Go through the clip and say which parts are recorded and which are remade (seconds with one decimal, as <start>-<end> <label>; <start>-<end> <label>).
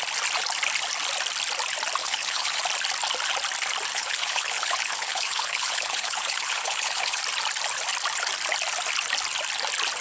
0.0-2.0 recorded; 2.0-2.6 remade; 2.6-3.9 recorded; 3.9-7.2 remade; 7.2-10.0 recorded